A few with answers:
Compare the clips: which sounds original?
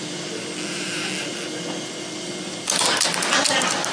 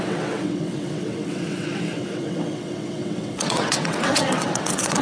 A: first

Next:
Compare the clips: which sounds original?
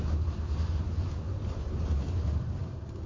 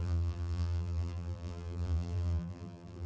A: first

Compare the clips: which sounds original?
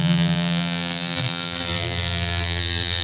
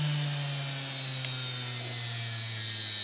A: second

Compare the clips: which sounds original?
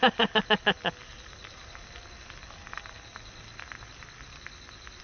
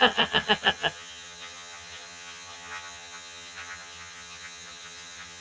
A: first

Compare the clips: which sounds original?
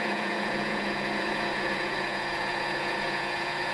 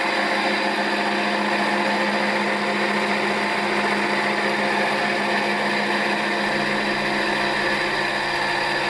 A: second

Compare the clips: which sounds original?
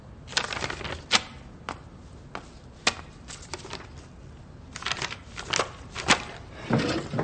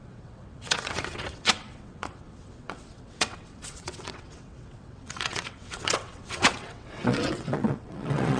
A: first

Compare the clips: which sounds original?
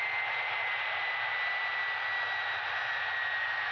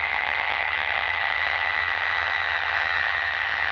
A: first